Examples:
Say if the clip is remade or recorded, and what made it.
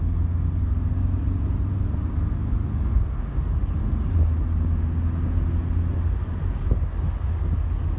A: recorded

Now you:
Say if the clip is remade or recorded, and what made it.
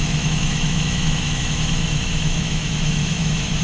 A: remade, autoencoder, DAC-VAE